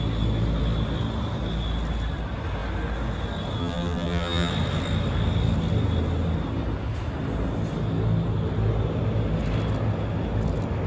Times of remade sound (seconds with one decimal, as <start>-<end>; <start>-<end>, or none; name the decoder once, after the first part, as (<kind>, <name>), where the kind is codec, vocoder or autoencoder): 3.6-4.5 (vocoder, BigVGAN v2)